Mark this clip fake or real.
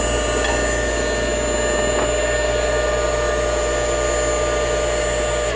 real